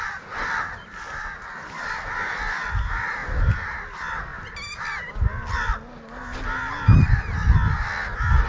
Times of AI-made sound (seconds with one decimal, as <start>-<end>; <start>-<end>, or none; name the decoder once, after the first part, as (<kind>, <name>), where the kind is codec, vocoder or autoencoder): none